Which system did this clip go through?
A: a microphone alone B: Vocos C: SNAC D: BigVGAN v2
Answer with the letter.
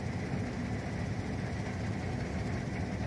A